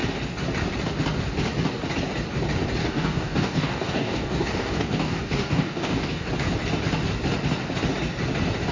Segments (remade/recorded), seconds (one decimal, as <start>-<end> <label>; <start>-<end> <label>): 0.0-2.8 recorded; 2.8-6.3 remade; 6.3-8.7 recorded